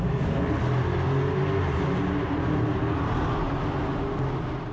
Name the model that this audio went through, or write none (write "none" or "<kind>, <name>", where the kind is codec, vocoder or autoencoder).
none